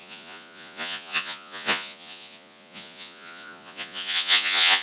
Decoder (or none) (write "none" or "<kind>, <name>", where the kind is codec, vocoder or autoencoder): vocoder, Vocos